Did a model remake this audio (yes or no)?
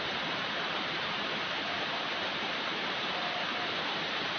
yes